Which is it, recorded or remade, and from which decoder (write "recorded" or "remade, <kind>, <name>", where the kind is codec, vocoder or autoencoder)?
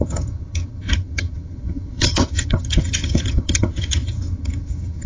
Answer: remade, vocoder, HiFi-GAN